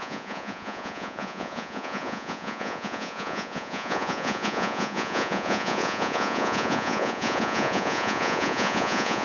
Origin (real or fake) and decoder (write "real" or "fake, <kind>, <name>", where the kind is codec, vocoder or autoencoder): fake, vocoder, Vocos